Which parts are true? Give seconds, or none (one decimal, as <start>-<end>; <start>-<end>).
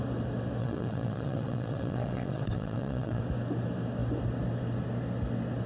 0.0-0.6; 3.2-5.7